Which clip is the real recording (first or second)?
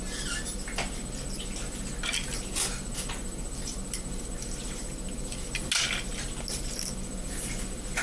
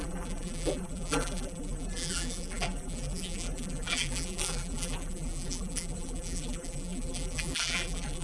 first